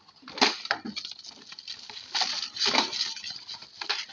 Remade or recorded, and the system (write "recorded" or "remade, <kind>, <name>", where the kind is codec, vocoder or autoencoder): recorded